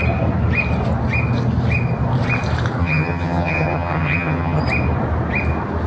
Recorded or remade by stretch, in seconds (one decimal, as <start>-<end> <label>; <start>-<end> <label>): 0.0-2.8 recorded; 2.8-4.6 remade; 4.6-5.9 recorded